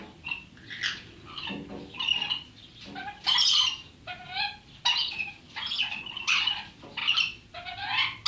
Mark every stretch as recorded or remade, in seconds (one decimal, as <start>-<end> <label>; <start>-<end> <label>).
0.0-8.3 recorded